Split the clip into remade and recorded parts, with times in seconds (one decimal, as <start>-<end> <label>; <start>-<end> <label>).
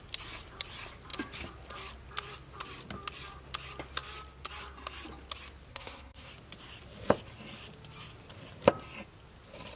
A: 0.0-5.7 recorded; 5.7-6.3 remade; 6.3-9.8 recorded